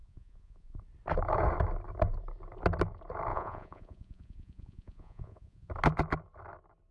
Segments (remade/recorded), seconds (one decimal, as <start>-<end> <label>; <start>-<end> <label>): 0.0-0.8 remade; 0.8-3.3 recorded; 3.3-5.7 remade; 5.7-6.9 recorded